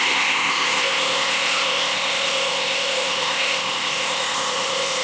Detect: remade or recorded remade